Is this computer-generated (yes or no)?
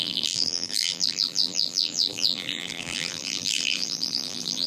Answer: yes